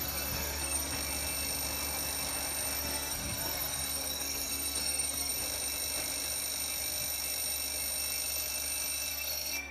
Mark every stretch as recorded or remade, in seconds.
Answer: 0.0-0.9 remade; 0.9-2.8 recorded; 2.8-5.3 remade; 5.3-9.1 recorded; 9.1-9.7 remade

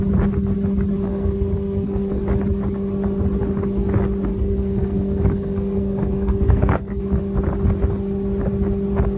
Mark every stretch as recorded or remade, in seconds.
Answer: 0.0-1.1 recorded; 1.1-2.2 remade; 2.2-4.3 recorded; 4.3-7.0 remade; 7.0-9.2 recorded

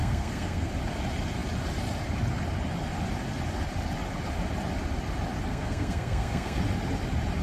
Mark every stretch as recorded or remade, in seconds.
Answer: 0.0-0.7 remade; 0.7-5.5 recorded; 5.5-6.6 remade; 6.6-7.4 recorded